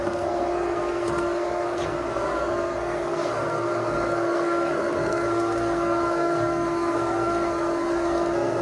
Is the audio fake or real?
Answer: fake